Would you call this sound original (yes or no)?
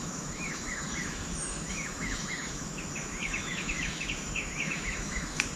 no